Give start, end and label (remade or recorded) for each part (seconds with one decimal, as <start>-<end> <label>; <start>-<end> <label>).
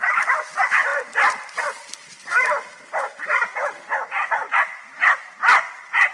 0.0-0.9 recorded; 0.9-1.5 remade; 1.5-6.1 recorded